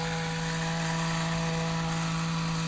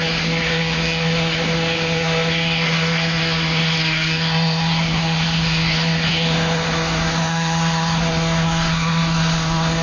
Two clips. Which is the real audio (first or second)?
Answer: first